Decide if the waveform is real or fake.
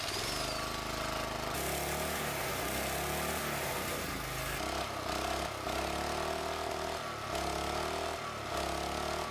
real